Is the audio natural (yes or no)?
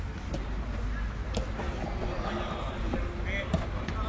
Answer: yes